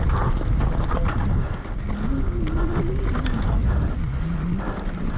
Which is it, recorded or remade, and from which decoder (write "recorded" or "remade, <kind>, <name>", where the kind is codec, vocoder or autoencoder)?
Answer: recorded